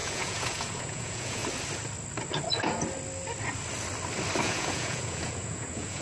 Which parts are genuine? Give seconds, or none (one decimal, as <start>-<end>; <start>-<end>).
1.4-4.4